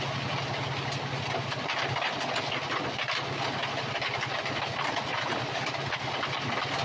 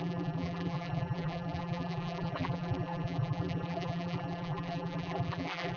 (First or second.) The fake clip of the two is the second